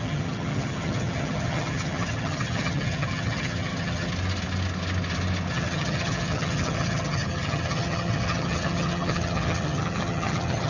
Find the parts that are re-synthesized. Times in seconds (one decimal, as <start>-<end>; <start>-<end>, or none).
0.0-4.1; 5.5-10.7